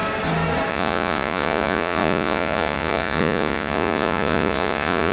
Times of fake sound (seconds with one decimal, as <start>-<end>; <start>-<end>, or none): 0.7-5.1

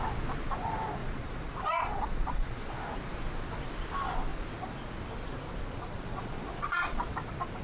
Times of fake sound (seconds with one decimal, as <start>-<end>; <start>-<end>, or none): 1.0-2.7; 5.9-7.1

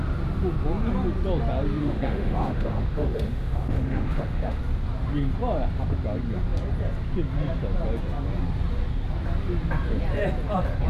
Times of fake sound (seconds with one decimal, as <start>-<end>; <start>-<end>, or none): 1.8-4.6

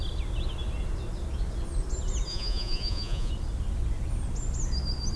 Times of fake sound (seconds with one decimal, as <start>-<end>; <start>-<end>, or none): 2.3-3.3

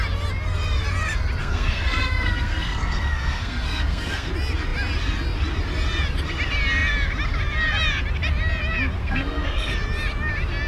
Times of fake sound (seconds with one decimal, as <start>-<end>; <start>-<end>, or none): 1.4-4.3; 9.0-9.7